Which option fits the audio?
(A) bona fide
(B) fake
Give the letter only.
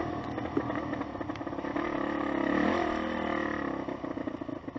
A